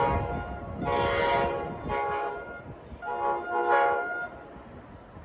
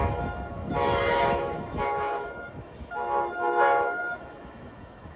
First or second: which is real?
first